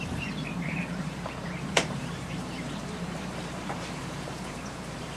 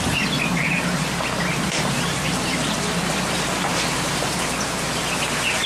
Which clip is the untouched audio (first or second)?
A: second